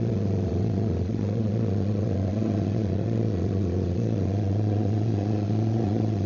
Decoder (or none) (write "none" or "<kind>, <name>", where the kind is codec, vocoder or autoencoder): vocoder, Vocos